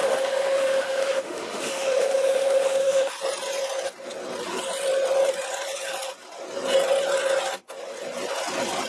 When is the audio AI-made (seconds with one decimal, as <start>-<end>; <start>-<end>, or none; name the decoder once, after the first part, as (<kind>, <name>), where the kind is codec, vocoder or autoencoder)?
0.0-3.1 (autoencoder, DAC-VAE)